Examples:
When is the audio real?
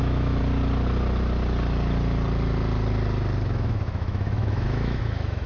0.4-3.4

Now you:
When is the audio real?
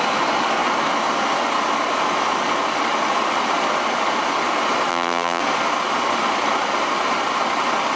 0.0-4.9; 5.4-8.0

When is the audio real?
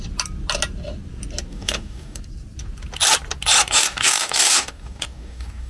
0.0-1.5; 2.2-3.6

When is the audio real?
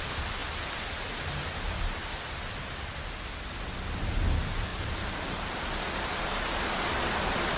0.0-4.7; 5.6-7.6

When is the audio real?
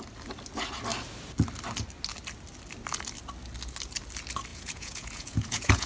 0.0-4.5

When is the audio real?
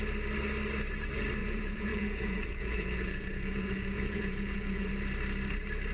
0.0-1.4; 4.9-5.9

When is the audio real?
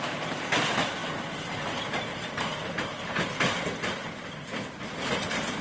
0.0-5.6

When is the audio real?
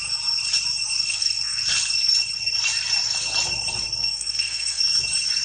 0.0-1.0; 1.6-4.0; 4.8-5.4